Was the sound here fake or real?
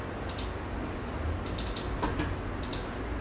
real